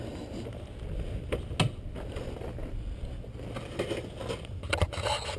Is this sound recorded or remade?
recorded